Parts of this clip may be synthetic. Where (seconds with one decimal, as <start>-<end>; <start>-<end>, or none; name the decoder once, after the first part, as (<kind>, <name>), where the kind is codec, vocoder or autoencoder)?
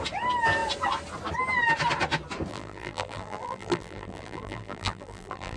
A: 2.5-5.6 (vocoder, BigVGAN v2)